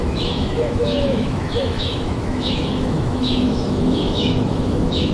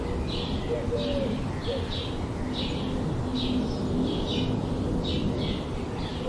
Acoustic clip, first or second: second